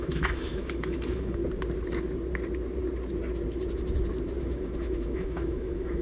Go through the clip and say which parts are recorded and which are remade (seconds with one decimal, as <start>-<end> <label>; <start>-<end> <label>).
0.0-1.4 remade; 1.4-4.4 recorded; 4.4-6.0 remade